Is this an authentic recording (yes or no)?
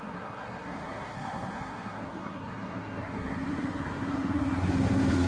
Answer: no